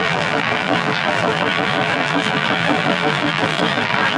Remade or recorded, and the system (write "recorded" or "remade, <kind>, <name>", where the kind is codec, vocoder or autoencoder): remade, vocoder, BigVGAN v2